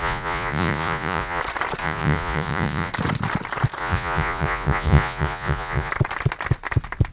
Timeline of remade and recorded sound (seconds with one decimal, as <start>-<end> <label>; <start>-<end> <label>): 0.0-1.4 remade; 1.4-1.8 recorded; 1.8-2.9 remade; 2.9-3.8 recorded; 3.8-5.9 remade; 5.9-7.1 recorded